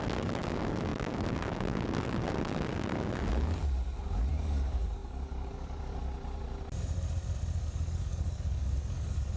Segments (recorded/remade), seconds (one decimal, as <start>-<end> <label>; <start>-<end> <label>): 0.0-3.6 remade; 3.6-4.3 recorded; 4.3-6.0 remade; 6.0-7.6 recorded; 7.6-9.4 remade